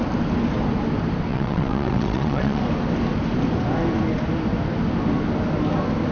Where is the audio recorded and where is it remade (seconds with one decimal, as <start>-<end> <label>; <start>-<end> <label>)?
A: 0.0-1.3 recorded; 1.3-2.6 remade; 2.6-6.1 recorded